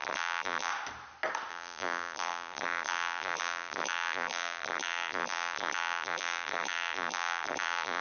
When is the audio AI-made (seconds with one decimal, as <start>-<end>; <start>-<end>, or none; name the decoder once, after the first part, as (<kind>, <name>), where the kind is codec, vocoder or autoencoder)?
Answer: 0.0-0.7 (vocoder, BigVGAN v2); 1.5-8.0